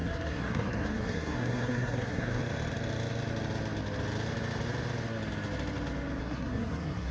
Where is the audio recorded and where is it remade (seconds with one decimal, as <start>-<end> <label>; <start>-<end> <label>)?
0.0-2.4 remade; 2.4-6.2 recorded; 6.2-7.1 remade